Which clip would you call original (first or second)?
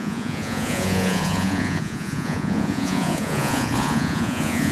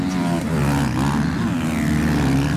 second